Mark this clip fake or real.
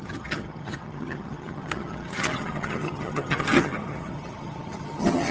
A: fake